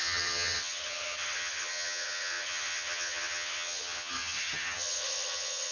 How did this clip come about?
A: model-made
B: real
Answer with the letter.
A